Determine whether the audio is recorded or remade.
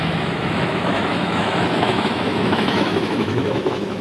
remade